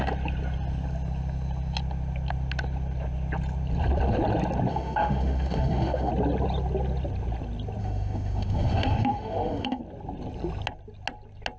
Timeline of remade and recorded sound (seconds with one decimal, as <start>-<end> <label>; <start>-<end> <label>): 0.0-4.7 recorded; 4.7-6.1 remade; 6.1-7.8 recorded; 7.8-9.8 remade; 9.8-11.6 recorded